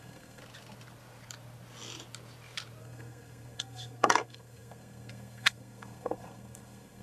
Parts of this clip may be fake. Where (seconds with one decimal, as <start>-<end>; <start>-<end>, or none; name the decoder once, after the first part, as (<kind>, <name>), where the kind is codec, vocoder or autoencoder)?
0.0-0.4 (codec, SNAC); 2.8-7.0